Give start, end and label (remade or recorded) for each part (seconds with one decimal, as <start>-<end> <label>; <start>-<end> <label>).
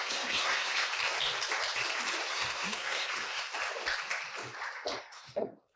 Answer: 0.0-0.9 remade; 0.9-2.3 recorded; 2.3-3.5 remade; 3.5-5.0 recorded; 5.0-5.8 remade